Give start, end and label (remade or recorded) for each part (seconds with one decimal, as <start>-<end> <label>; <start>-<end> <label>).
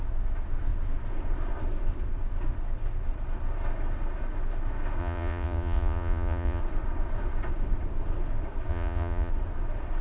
0.0-5.0 recorded; 5.0-6.6 remade; 6.6-8.7 recorded; 8.7-9.3 remade; 9.3-10.0 recorded